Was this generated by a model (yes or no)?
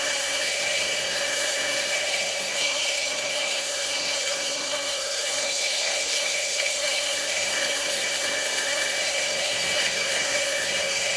yes